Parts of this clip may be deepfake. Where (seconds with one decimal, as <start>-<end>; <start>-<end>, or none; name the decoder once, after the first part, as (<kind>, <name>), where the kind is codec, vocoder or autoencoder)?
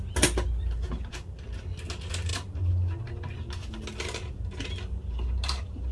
none